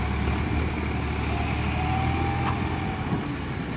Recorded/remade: recorded